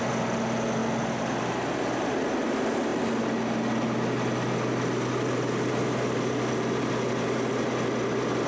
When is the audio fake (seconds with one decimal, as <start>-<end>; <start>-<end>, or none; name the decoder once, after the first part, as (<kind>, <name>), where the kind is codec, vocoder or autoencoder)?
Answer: none